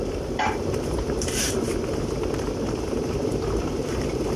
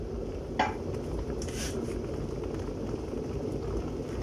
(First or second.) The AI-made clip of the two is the first